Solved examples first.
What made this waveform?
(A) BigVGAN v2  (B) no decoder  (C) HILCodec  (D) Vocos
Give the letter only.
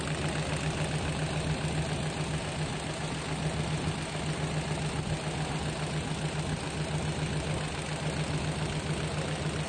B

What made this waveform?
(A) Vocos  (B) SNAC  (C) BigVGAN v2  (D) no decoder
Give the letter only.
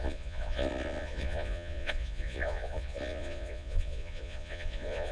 A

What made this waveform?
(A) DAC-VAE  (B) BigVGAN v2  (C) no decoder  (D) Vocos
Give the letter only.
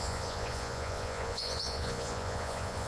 D